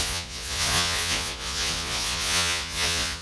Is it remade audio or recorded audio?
remade